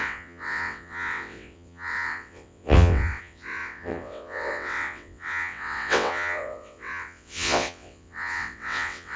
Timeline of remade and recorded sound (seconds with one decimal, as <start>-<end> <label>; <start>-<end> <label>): 0.0-9.2 remade